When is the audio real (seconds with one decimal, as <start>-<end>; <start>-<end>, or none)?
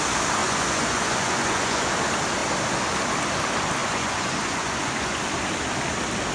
0.0-0.4; 1.9-3.8; 5.2-6.3